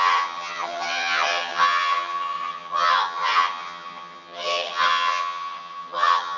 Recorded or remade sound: remade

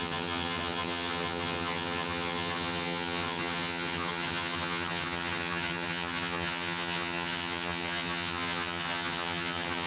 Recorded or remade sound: remade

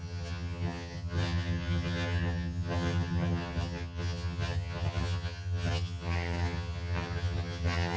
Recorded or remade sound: remade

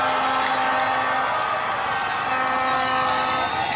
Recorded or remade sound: recorded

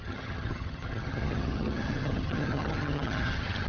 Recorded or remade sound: remade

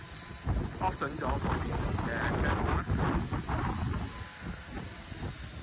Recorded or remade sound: recorded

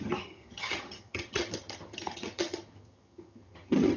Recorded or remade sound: remade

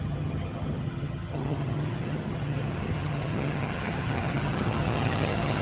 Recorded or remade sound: remade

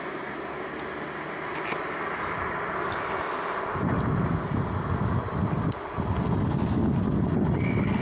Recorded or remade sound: recorded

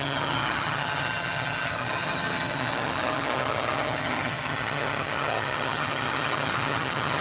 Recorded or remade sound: remade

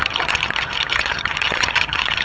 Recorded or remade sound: remade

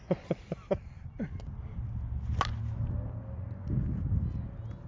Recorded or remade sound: recorded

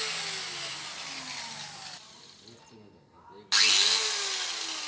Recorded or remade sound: recorded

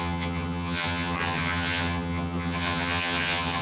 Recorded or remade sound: remade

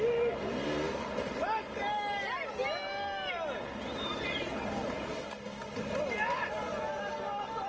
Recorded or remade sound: recorded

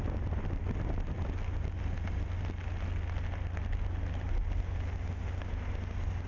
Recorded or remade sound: recorded